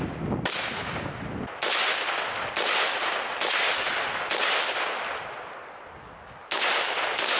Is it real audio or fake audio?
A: real